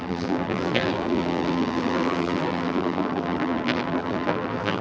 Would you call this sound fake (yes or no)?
yes